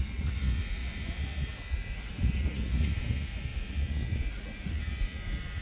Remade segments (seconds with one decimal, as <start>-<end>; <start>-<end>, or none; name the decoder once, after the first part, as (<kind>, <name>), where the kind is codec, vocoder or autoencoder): 0.0-5.6 (vocoder, Vocos)